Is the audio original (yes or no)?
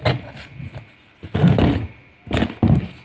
yes